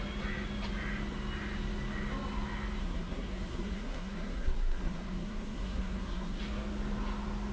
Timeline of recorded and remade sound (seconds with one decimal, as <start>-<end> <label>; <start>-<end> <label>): 0.0-2.8 recorded; 2.8-6.4 remade; 6.4-7.5 recorded